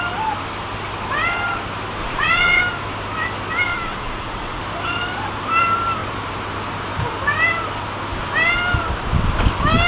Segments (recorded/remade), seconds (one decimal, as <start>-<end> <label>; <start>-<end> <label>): 0.0-2.0 recorded; 2.0-2.6 remade; 2.6-3.7 recorded; 3.7-4.6 remade; 4.6-9.9 recorded